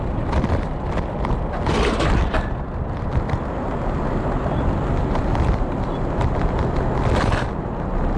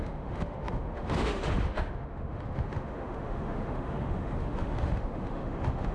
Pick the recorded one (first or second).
first